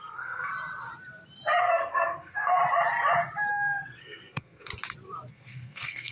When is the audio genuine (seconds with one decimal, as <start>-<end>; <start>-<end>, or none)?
0.5-1.6; 2.6-3.5; 4.7-5.3